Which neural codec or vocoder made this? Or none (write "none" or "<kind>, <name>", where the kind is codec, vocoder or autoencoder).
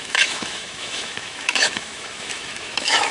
autoencoder, DAC-VAE